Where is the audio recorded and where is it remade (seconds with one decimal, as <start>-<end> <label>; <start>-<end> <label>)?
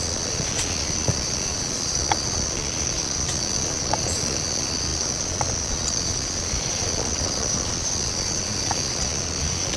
0.0-9.8 remade